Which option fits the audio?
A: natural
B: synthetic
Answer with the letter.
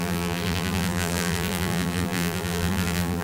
B